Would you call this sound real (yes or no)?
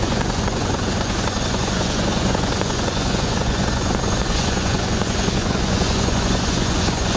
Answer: no